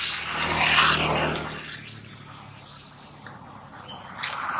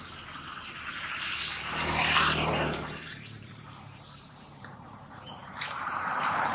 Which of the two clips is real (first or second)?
first